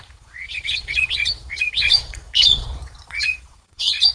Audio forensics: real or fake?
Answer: fake